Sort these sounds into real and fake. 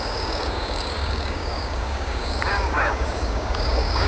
fake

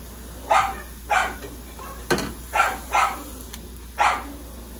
real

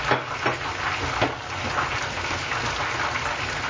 real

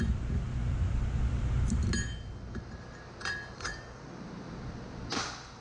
real